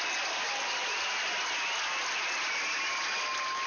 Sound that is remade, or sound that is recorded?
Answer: recorded